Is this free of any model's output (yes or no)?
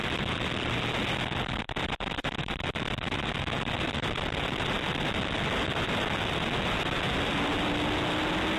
yes